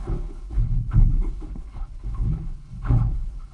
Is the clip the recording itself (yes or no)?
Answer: no